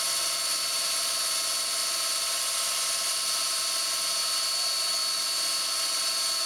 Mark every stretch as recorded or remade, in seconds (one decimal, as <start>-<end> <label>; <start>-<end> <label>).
0.0-6.5 recorded